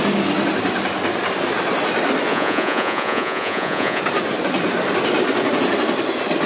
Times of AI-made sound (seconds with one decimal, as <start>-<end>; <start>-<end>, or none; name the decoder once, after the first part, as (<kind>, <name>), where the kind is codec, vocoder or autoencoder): 2.3-4.0 (vocoder, Vocos)